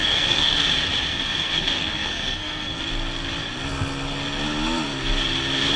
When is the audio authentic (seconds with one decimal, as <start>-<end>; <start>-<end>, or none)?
0.7-1.1; 2.8-5.8